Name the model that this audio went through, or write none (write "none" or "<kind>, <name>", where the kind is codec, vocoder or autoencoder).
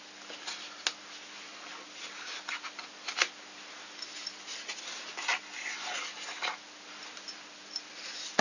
none